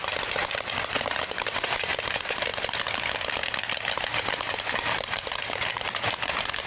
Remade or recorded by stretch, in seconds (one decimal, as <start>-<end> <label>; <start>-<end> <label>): 0.0-2.5 remade; 2.5-4.3 recorded; 4.3-6.7 remade